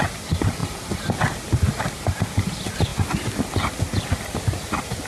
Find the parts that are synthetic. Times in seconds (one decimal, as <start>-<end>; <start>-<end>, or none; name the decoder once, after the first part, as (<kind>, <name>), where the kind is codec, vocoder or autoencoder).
0.6-1.9 (vocoder, BigVGAN v2); 2.9-3.4